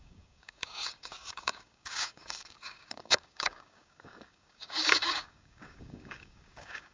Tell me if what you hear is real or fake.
fake